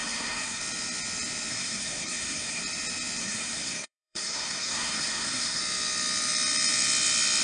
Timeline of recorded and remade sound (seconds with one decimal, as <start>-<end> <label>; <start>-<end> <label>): 0.0-0.6 remade; 0.6-1.5 recorded; 1.5-2.6 remade; 2.6-3.2 recorded; 3.2-5.6 remade; 5.6-7.4 recorded